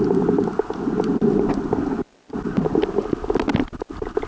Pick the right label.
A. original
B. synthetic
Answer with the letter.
A